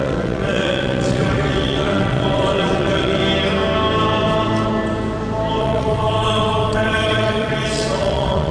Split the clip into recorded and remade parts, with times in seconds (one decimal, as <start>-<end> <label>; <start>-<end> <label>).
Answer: 0.0-3.2 remade; 3.2-5.6 recorded; 5.6-8.5 remade